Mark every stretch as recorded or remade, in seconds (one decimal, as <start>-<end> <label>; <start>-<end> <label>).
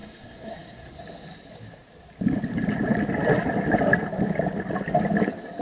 0.0-1.0 remade; 1.0-5.6 recorded